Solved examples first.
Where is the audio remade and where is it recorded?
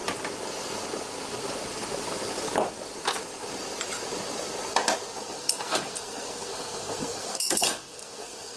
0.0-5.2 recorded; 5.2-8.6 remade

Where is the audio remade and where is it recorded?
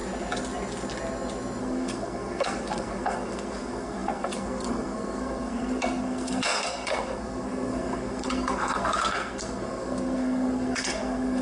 0.0-1.6 recorded; 1.6-11.4 remade